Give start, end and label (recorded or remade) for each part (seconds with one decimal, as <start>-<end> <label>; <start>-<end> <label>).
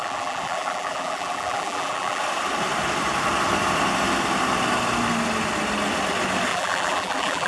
0.0-2.2 remade; 2.2-6.5 recorded; 6.5-7.5 remade